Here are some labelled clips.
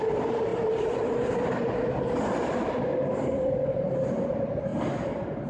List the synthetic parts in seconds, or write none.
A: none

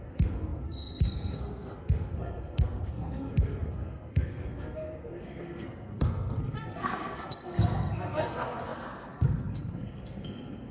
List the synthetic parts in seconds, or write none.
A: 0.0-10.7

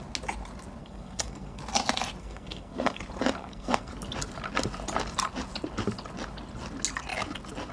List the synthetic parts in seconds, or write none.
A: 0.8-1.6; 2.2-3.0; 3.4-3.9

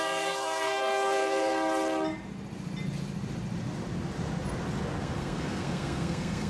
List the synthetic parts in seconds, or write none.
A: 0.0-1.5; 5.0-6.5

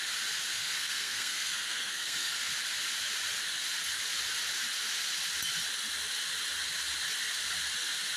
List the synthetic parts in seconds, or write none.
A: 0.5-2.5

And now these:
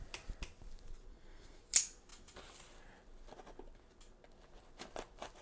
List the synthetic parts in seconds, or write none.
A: 1.1-1.6

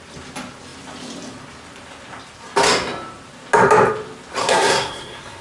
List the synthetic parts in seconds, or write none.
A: 4.4-5.4